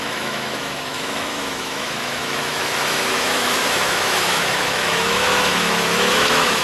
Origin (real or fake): fake